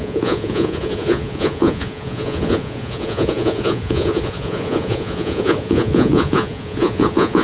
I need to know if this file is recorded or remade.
remade